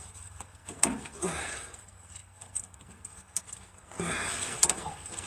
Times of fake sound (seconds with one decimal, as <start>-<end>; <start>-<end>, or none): 0.0-5.3